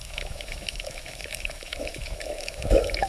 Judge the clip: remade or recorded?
remade